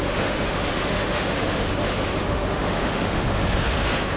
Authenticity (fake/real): fake